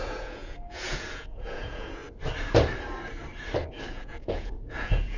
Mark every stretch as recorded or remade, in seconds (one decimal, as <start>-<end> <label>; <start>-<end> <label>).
0.0-2.0 remade; 2.0-3.9 recorded; 3.9-5.2 remade